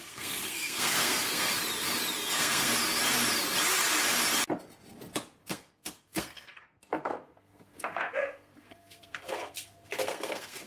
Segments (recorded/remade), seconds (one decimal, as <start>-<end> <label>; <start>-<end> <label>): 0.0-1.5 remade; 1.5-2.3 recorded; 2.3-2.7 remade; 2.7-5.4 recorded; 5.4-10.7 remade